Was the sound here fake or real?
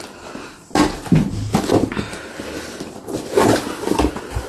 real